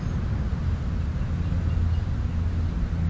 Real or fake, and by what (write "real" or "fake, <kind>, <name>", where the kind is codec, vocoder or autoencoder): real